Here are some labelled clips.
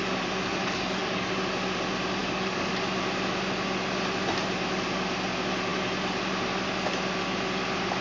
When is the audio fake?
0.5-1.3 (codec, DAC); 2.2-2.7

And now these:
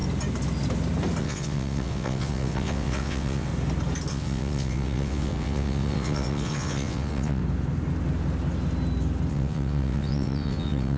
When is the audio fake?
1.2-3.5 (vocoder, WaveNeXt); 4.1-7.4; 9.3-11.0